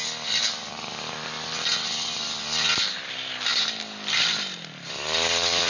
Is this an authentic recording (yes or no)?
yes